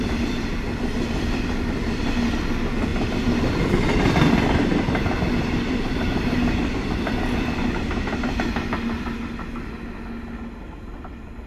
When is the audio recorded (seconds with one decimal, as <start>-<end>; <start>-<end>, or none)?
0.0-2.9; 3.7-11.5